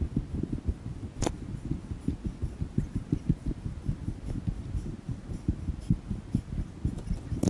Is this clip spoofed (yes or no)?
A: no